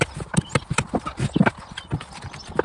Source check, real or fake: real